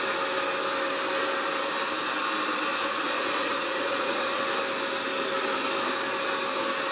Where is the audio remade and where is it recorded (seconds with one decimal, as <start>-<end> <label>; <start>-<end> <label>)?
0.0-2.7 recorded; 2.7-4.4 remade; 4.4-6.9 recorded